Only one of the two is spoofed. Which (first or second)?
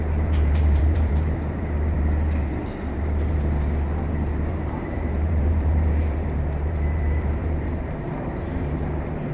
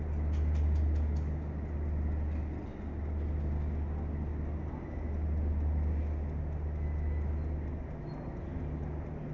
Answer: first